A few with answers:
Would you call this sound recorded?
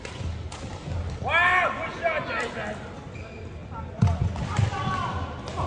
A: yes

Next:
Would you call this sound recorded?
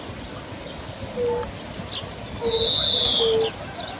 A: yes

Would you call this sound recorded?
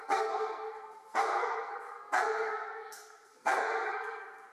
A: no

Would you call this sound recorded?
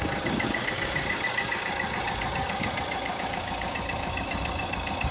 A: no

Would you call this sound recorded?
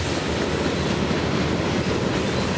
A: yes